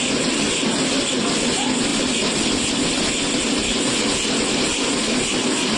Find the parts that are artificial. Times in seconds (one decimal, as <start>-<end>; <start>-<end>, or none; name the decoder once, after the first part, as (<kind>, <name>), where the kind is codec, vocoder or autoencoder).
none